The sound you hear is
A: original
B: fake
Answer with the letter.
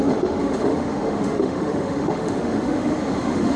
B